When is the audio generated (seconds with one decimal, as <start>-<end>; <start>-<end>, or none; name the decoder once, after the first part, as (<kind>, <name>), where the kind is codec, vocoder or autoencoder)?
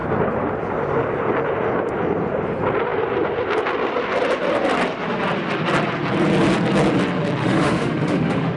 7.4-8.6 (autoencoder, DAC-VAE)